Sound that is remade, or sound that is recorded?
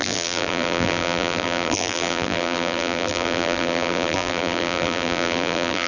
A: remade